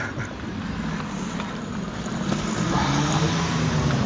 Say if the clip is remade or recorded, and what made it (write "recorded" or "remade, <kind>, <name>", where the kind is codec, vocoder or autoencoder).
recorded